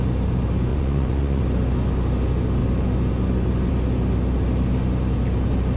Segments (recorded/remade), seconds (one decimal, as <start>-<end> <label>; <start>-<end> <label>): 0.0-0.7 recorded; 0.7-1.4 remade; 1.4-5.8 recorded